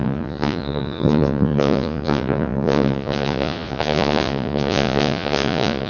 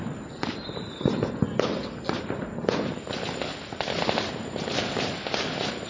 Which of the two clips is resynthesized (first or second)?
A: first